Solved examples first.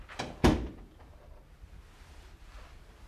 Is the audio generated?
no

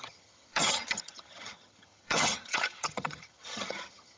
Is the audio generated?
yes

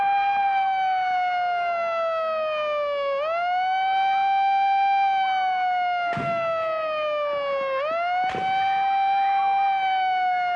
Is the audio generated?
no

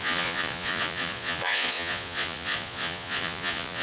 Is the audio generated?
yes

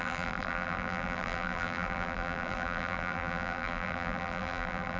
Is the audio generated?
yes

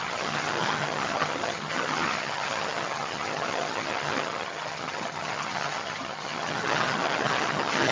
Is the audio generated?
yes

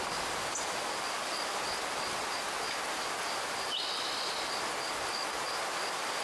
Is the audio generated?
no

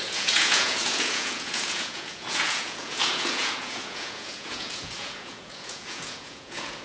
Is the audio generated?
yes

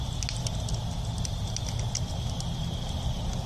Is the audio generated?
no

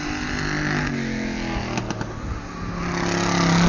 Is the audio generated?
no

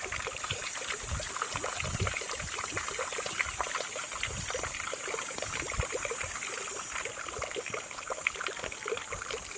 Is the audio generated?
no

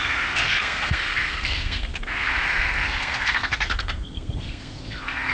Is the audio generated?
yes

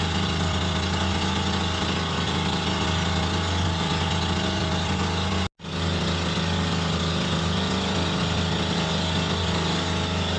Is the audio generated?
no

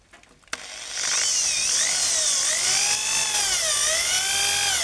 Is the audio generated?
no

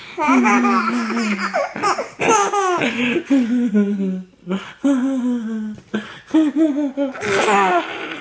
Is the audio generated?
no